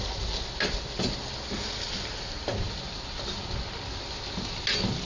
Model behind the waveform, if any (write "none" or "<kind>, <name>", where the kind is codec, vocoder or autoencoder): none